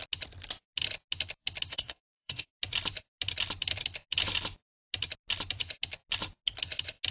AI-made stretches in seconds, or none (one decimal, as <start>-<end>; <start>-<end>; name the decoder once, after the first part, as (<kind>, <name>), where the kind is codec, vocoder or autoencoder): 1.7-2.4 (codec, SNAC)